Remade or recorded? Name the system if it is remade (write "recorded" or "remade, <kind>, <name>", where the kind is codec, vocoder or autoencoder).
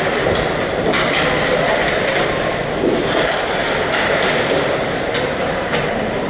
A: recorded